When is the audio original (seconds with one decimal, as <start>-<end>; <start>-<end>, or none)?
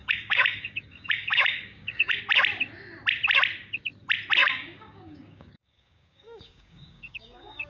2.2-4.4